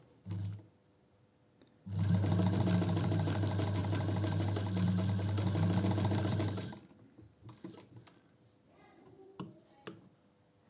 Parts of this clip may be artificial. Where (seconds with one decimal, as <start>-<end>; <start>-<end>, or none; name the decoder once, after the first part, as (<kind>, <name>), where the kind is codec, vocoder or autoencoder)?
none